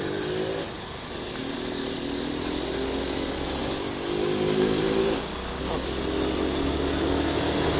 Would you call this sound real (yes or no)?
yes